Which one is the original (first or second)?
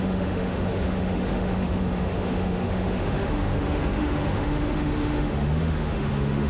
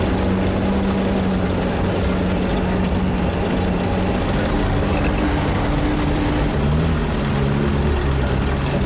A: second